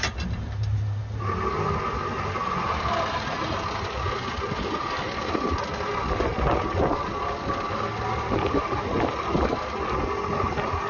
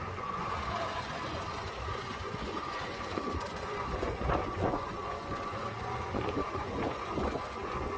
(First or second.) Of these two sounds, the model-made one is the second